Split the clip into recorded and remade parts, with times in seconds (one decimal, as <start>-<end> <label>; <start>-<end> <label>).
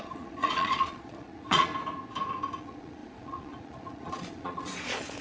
0.0-1.7 remade; 1.7-2.6 recorded; 2.6-5.2 remade